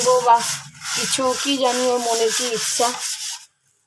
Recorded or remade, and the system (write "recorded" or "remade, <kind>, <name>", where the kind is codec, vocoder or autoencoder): recorded